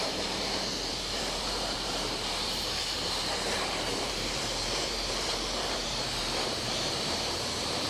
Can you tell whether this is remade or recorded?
remade